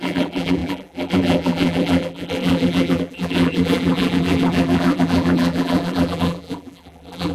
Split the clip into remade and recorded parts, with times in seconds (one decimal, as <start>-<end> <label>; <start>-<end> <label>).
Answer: 0.0-7.3 remade